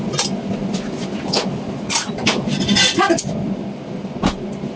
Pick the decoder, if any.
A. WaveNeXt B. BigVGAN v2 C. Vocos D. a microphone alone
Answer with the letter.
D